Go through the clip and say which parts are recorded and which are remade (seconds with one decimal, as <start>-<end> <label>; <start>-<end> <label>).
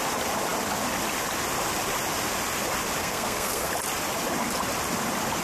0.0-3.0 recorded; 3.0-3.7 remade; 3.7-5.4 recorded